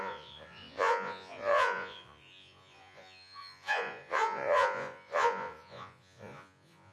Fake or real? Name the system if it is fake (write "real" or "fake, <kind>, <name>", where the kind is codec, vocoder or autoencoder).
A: fake, vocoder, Vocos